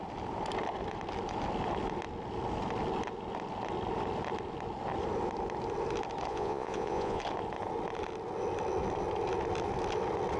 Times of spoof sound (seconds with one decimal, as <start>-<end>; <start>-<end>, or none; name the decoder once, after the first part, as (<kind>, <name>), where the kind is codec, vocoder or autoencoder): 6.3-7.2 (vocoder, Vocos)